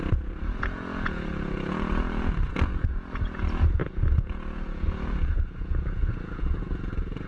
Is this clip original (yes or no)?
no